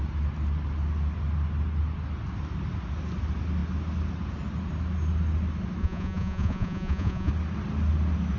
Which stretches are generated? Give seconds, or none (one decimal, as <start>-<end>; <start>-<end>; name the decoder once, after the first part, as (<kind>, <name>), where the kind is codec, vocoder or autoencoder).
5.8-7.3 (vocoder, Vocos)